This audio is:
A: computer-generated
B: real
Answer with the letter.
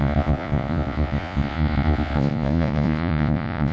A